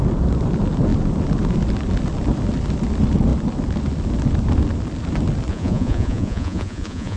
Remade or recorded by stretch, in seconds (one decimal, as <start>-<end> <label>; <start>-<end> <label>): 0.0-5.5 recorded; 5.5-7.2 remade